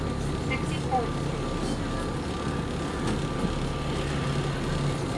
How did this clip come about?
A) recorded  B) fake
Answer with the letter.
A